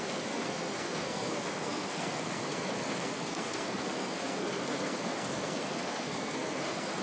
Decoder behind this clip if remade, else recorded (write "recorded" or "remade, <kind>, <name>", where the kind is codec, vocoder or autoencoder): remade, codec, SNAC